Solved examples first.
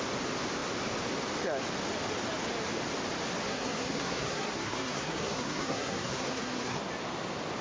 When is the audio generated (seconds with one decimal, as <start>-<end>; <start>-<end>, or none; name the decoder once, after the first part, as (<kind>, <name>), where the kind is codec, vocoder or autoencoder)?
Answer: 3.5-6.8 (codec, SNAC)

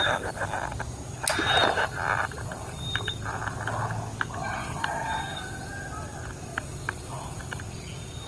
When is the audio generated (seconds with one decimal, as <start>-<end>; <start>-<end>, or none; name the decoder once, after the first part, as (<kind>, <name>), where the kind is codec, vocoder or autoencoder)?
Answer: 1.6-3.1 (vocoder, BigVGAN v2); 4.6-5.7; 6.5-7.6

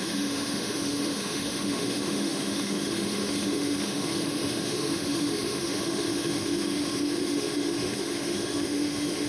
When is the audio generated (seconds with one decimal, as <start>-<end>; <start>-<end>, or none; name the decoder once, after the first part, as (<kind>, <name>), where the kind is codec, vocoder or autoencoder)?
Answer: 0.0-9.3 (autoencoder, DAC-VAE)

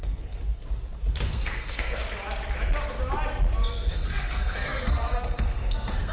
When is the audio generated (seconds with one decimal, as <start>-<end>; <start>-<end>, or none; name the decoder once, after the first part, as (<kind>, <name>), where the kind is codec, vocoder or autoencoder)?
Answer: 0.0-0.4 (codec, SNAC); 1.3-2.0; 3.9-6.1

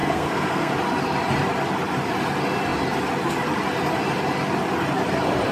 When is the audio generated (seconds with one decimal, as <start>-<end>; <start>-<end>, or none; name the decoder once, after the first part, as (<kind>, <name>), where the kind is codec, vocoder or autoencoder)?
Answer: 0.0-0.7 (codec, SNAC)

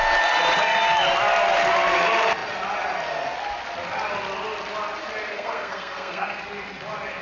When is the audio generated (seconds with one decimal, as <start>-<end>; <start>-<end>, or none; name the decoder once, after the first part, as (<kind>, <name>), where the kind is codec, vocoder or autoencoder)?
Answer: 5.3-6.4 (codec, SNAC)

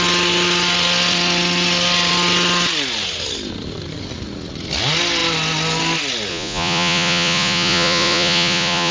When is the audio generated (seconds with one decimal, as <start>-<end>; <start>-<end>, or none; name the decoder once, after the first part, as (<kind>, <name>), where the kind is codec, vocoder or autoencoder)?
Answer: 6.3-8.9 (vocoder, Vocos)